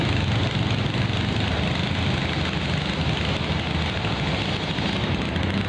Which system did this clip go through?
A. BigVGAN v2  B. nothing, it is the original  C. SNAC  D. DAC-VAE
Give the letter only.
B